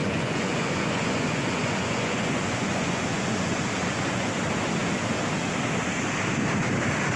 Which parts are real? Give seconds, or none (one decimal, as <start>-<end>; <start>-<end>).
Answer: 4.3-7.2

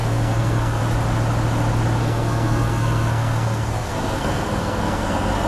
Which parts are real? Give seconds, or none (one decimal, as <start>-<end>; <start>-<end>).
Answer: 0.8-2.0

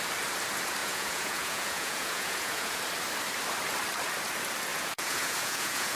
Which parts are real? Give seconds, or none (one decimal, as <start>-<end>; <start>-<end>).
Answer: 0.0-0.8; 2.8-4.7

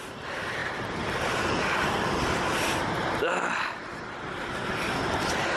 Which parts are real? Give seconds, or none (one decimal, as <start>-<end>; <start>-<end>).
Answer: 0.0-5.6

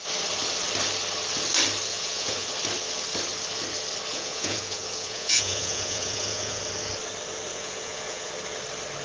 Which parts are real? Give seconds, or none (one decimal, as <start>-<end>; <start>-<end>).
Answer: 0.0-1.9; 2.5-4.1; 6.6-7.5; 8.3-9.0

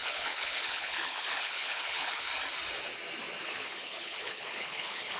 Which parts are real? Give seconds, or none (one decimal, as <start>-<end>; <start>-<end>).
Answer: 2.3-3.4